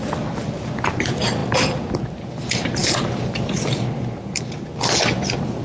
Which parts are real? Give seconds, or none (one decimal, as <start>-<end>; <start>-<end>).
0.0-5.6